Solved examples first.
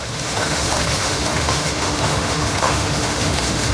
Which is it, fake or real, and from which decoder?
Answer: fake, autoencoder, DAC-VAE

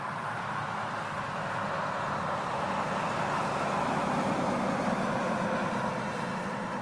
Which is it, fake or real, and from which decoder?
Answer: real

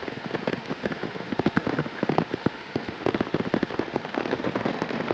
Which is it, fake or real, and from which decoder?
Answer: fake, autoencoder, DAC-VAE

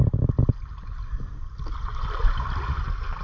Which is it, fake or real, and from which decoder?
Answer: real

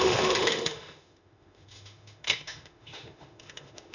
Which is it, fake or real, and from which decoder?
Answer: fake, autoencoder, DAC-VAE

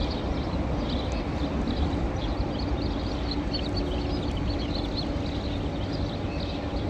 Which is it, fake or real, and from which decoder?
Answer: real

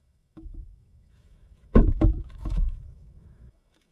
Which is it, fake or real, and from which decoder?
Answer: fake, autoencoder, DAC-VAE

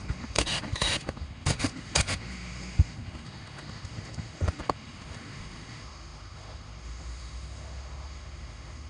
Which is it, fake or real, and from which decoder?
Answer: fake, autoencoder, DAC-VAE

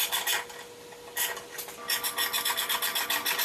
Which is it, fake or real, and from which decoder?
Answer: real